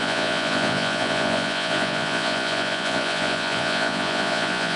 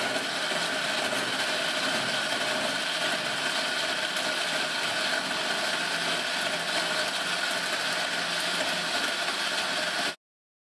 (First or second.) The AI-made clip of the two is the first